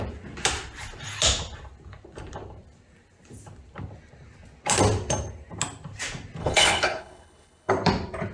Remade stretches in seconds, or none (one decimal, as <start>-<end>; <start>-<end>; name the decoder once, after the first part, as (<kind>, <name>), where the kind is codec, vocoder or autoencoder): 6.4-7.7 (codec, HILCodec)